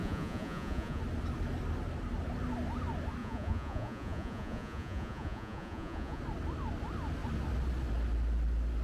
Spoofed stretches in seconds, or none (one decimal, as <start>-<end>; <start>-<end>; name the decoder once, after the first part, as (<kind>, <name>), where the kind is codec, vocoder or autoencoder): 0.0-1.0 (vocoder, Vocos); 3.2-6.2